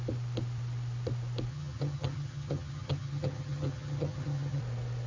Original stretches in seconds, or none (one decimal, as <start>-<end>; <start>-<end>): 0.0-1.5; 4.6-5.1